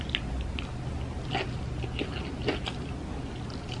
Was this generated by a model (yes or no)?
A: no